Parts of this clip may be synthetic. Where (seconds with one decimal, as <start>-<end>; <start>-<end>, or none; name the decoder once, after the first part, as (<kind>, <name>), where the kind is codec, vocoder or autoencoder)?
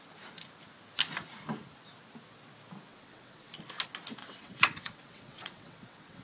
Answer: 2.9-3.5 (vocoder, WaveNeXt); 4.2-6.2